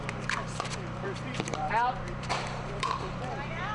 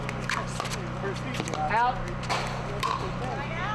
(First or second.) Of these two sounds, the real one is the second